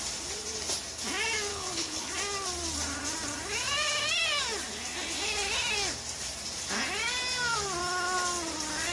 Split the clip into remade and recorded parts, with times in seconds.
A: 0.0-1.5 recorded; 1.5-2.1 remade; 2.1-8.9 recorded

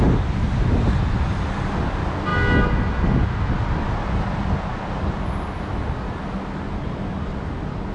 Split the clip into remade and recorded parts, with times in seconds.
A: 0.0-7.9 recorded

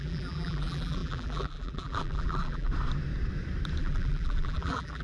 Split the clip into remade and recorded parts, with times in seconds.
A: 0.0-2.7 remade; 2.7-3.8 recorded; 3.8-5.0 remade

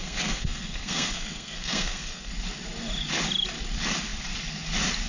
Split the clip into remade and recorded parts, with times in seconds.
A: 0.0-2.3 remade; 2.3-5.1 recorded

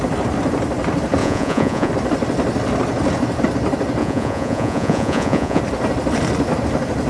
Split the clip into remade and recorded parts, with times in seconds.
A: 0.0-1.2 recorded; 1.2-1.9 remade; 1.9-4.0 recorded; 4.0-5.6 remade; 5.6-7.1 recorded

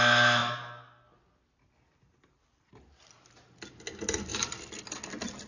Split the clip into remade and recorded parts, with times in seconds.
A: 0.0-5.5 recorded

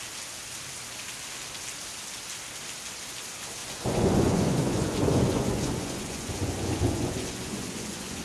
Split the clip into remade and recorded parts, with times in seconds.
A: 0.0-3.6 recorded; 3.6-8.2 remade